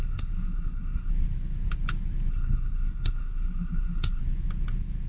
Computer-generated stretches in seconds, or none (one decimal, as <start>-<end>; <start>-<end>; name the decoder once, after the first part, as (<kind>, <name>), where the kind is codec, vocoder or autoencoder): 0.0-1.1 (codec, SNAC); 2.3-4.2